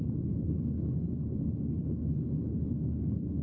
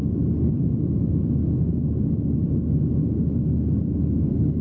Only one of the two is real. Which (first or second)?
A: second